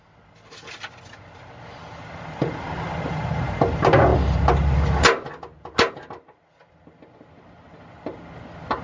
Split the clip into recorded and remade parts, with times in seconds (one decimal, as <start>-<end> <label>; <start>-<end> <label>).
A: 0.0-8.8 recorded